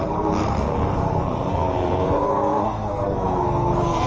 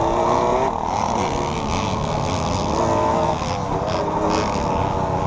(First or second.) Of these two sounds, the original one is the second